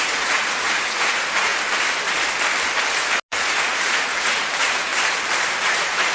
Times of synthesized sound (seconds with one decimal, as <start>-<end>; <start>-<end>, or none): 0.0-1.5; 3.3-4.9; 5.6-6.1